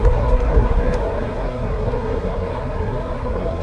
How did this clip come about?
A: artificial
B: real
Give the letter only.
A